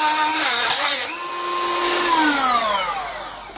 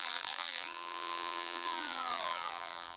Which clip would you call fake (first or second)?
second